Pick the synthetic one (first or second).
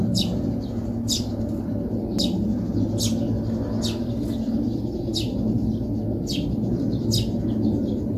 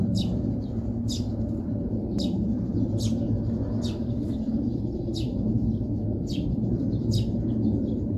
second